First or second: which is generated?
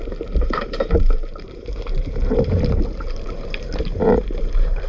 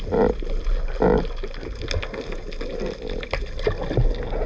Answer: first